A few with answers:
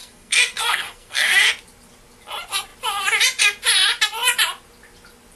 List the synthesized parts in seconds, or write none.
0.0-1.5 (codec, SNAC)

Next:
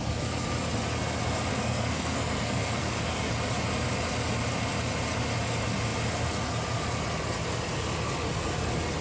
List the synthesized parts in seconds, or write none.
1.5-3.3 (codec, SNAC)

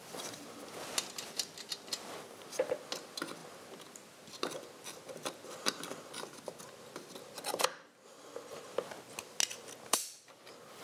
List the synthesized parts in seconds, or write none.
none

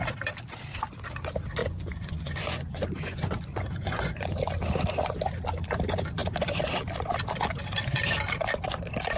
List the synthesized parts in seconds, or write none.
1.6-4.4 (vocoder, Vocos)